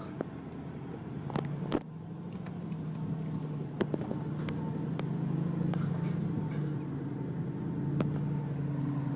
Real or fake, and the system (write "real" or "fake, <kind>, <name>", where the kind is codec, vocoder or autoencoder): real